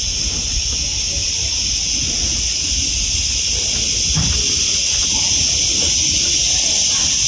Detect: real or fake real